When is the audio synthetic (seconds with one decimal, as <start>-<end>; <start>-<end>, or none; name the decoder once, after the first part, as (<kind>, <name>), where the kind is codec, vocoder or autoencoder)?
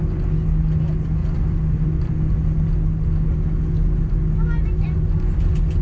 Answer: 1.2-2.1 (vocoder, BigVGAN v2)